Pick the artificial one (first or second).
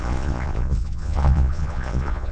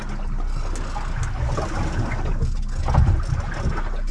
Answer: first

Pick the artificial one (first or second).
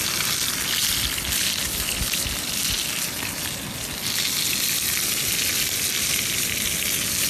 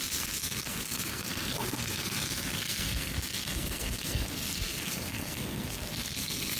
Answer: second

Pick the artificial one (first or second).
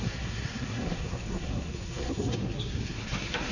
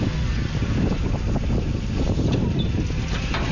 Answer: first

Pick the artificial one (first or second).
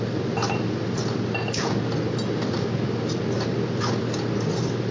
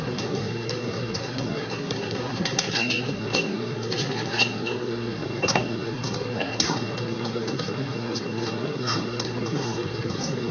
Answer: second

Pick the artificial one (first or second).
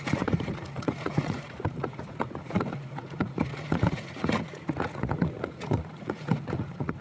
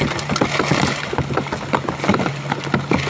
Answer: first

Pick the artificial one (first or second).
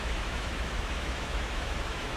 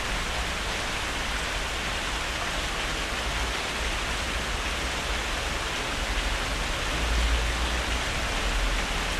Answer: first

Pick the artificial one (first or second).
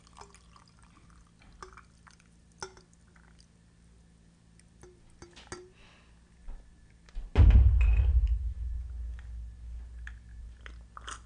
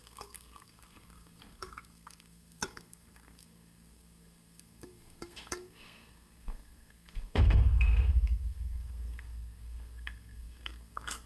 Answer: second